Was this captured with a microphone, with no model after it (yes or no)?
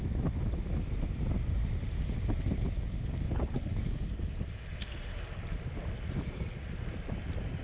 yes